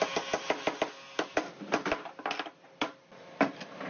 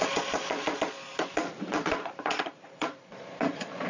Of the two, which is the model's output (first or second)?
second